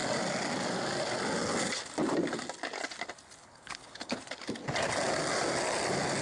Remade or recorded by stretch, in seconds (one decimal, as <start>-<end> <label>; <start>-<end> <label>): 0.0-3.4 recorded; 3.4-4.2 remade; 4.2-6.2 recorded